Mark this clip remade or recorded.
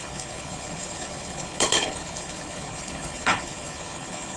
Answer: remade